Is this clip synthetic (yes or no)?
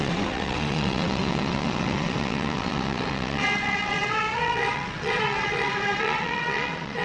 yes